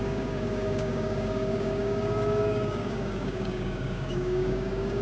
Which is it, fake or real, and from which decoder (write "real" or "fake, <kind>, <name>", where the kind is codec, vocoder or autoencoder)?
fake, codec, DAC